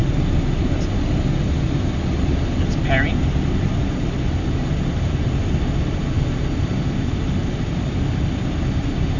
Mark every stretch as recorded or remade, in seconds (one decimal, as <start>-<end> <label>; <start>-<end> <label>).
0.0-9.2 recorded